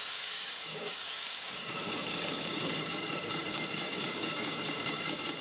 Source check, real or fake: fake